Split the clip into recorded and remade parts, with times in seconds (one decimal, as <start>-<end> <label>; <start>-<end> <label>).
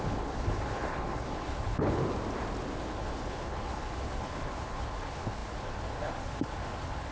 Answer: 0.0-2.0 remade; 2.0-2.8 recorded; 2.8-7.1 remade